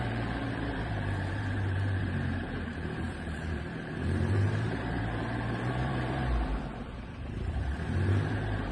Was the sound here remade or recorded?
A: remade